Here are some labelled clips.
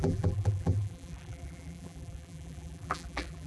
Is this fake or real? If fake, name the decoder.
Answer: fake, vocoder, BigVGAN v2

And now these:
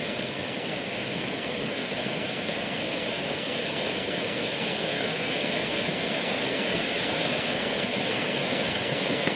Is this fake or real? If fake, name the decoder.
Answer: fake, codec, SNAC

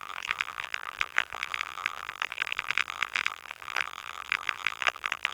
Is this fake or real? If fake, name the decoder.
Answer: fake, vocoder, BigVGAN v2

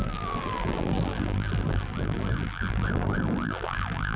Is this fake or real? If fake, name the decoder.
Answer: fake, vocoder, BigVGAN v2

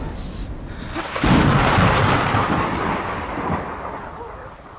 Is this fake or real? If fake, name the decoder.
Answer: real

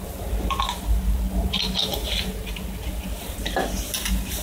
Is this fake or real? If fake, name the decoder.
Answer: real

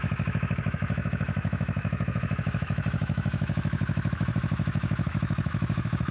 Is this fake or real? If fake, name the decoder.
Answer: fake, autoencoder, DAC-VAE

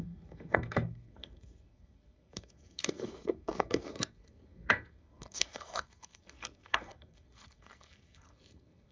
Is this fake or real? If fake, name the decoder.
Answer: fake, codec, SNAC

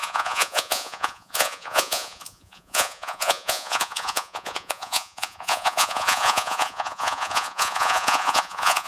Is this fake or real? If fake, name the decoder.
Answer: fake, vocoder, Vocos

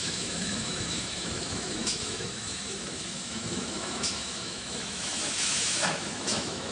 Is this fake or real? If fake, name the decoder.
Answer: fake, autoencoder, DAC-VAE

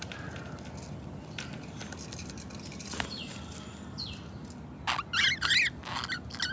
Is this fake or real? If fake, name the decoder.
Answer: real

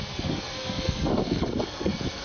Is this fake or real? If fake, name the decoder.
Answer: fake, codec, SNAC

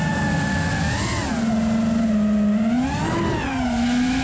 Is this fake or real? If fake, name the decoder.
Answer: real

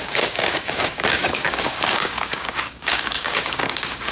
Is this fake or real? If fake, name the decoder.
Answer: fake, codec, DAC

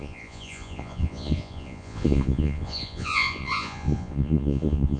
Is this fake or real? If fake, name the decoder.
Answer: fake, vocoder, Vocos